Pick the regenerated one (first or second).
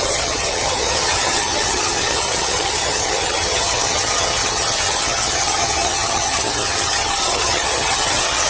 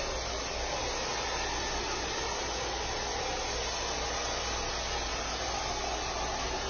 first